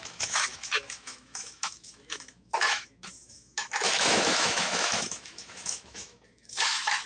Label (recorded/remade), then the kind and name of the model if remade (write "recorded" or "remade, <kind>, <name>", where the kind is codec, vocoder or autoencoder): remade, autoencoder, DAC-VAE